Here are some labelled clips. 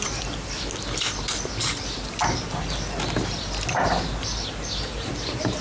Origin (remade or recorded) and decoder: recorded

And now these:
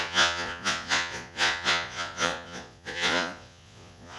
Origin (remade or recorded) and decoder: remade, vocoder, Vocos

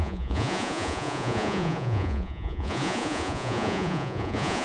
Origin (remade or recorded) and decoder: remade, vocoder, Vocos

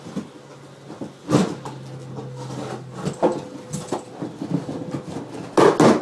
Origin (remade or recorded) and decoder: recorded